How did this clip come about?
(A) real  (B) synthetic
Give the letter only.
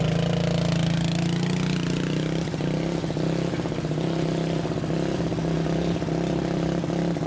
A